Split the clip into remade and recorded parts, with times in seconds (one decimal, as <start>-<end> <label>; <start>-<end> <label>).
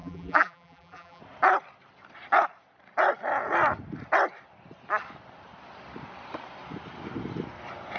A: 0.0-1.2 remade; 1.2-8.0 recorded